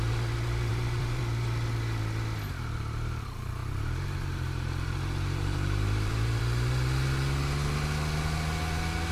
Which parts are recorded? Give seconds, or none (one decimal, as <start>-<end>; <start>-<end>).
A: 0.0-0.7; 1.2-3.6; 6.4-9.1